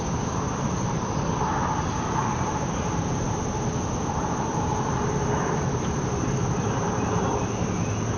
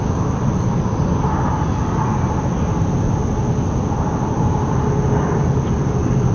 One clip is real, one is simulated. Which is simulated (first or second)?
first